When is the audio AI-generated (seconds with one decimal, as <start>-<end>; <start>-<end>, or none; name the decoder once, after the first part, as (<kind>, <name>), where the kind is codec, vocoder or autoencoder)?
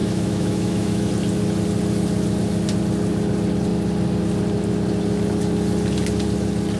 0.0-1.1 (autoencoder, DAC-VAE)